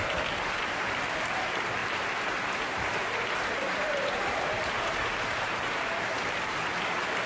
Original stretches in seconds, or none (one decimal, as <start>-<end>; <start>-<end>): 0.0-1.8; 6.2-7.3